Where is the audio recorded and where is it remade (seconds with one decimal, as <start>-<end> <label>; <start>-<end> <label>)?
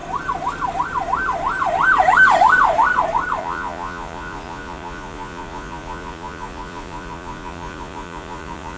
0.0-3.4 recorded; 3.4-8.8 remade